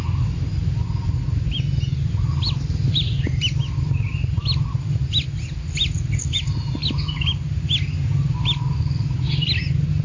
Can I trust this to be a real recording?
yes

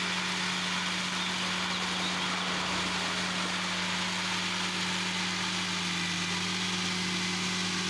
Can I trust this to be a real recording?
yes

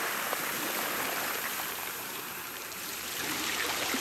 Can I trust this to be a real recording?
no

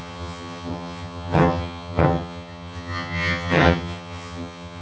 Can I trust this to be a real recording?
no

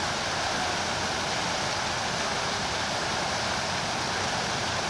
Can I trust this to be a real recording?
yes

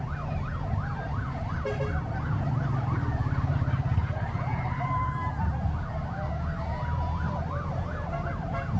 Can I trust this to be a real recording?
yes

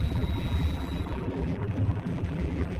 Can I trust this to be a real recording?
no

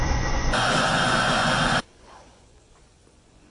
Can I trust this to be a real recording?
no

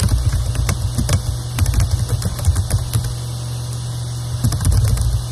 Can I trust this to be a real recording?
yes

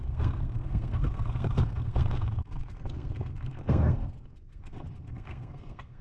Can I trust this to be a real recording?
no